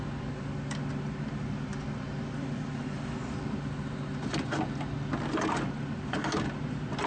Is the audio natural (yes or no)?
yes